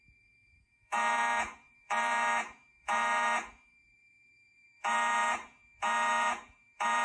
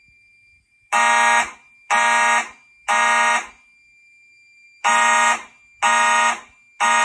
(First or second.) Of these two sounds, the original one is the second